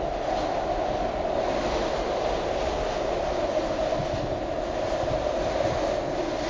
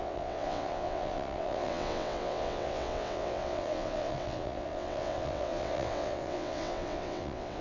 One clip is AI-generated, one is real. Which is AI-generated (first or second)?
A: second